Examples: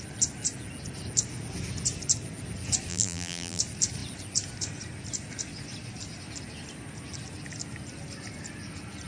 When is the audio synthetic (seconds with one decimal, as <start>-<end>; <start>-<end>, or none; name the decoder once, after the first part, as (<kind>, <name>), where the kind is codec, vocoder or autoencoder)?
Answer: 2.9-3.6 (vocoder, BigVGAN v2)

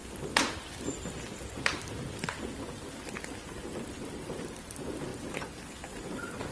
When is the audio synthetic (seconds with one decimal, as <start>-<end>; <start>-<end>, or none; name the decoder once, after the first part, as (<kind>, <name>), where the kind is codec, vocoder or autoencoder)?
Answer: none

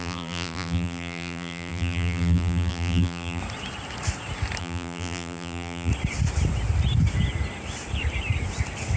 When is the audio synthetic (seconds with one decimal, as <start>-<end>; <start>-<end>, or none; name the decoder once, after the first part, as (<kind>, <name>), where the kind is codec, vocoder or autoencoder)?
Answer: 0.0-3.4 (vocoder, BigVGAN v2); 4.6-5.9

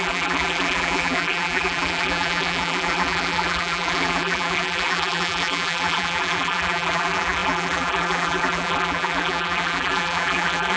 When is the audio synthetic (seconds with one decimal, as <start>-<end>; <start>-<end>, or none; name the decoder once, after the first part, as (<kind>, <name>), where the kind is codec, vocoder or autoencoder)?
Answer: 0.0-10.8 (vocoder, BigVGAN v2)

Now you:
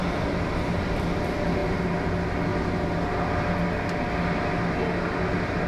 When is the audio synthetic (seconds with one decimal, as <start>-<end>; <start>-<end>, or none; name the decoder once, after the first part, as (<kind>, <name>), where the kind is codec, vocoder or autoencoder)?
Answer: 1.6-2.1 (vocoder, BigVGAN v2)

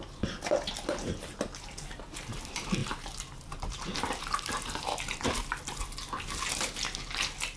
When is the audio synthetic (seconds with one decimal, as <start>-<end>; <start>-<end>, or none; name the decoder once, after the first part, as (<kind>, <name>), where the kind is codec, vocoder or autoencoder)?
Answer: 2.8-4.6 (vocoder, BigVGAN v2)

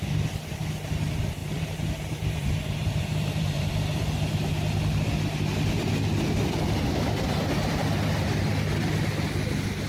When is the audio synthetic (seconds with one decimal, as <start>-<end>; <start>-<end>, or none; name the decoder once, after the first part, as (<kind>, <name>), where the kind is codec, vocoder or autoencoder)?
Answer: 1.4-3.7 (vocoder, BigVGAN v2)

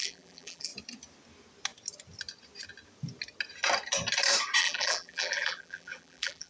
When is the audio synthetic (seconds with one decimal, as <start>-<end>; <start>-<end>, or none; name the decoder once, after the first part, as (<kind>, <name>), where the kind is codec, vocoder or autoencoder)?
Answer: 0.0-0.7 (vocoder, BigVGAN v2); 4.6-6.5